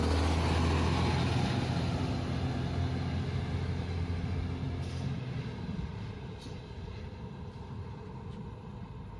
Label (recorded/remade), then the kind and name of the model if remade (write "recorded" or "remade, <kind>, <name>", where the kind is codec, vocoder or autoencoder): recorded